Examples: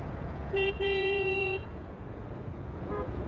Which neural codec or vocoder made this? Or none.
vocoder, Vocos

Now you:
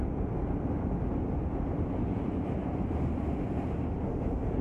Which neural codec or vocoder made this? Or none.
none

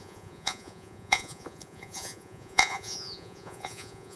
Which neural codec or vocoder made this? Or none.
vocoder, Vocos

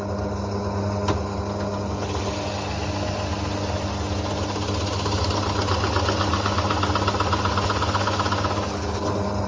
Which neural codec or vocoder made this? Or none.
none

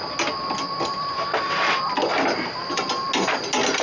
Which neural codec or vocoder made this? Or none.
none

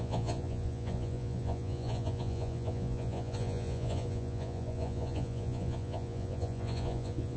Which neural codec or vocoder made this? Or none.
vocoder, Vocos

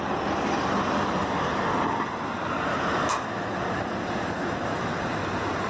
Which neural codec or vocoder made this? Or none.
none